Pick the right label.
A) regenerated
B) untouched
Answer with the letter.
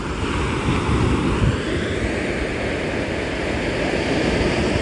B